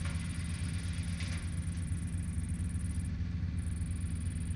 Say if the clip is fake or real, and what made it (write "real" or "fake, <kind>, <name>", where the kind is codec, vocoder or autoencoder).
real